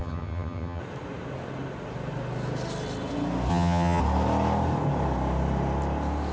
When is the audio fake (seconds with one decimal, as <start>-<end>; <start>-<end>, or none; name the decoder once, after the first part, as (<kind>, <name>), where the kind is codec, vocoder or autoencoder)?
0.0-0.8 (vocoder, HiFi-GAN); 3.5-4.0